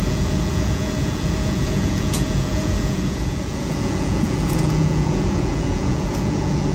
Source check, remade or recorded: remade